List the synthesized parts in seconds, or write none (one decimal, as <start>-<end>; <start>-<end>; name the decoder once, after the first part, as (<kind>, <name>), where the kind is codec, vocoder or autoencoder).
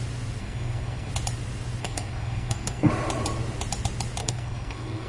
0.4-1.1 (codec, SNAC); 1.8-2.9; 4.2-5.1